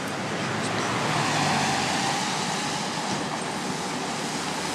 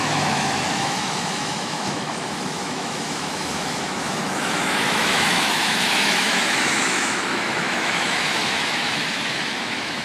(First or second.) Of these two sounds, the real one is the first